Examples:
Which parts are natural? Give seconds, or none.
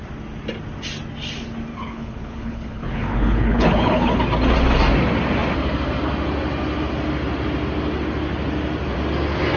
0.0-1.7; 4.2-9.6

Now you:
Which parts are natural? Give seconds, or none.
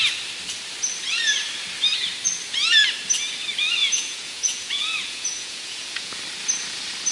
0.0-3.8; 6.2-7.1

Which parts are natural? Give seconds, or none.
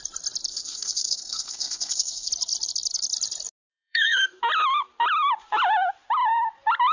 0.0-0.5; 2.3-3.7; 4.4-6.9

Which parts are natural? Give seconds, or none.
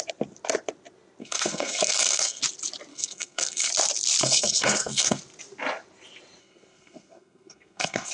0.0-1.2; 2.4-2.9; 3.7-4.2; 5.2-6.4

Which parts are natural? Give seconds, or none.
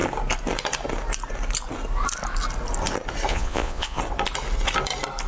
0.0-3.3; 4.0-5.3